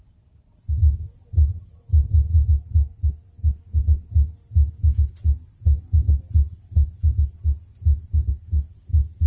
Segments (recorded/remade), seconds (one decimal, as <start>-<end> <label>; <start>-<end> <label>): 0.0-9.3 recorded